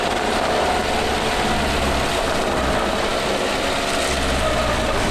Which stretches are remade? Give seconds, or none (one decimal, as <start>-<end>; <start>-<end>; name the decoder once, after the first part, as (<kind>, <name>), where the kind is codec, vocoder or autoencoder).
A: none